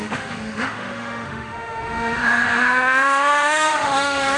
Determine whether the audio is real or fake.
fake